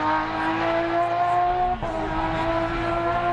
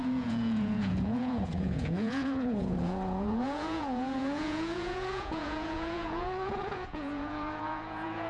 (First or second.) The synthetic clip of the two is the second